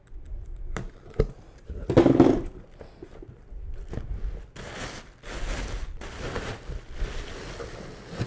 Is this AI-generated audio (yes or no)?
no